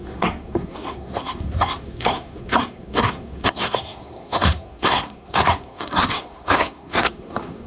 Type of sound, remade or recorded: remade